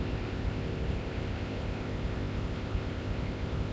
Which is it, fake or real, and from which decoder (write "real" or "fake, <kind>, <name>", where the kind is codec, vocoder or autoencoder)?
fake, codec, ZipCodec